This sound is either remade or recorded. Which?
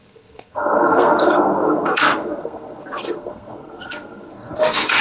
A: remade